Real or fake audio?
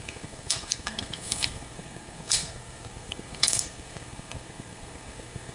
fake